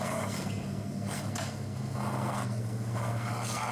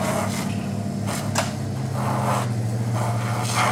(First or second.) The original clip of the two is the second